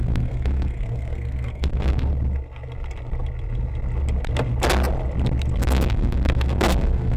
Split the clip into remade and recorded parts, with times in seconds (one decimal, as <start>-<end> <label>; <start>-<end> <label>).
0.0-2.1 remade; 2.1-5.6 recorded; 5.6-7.2 remade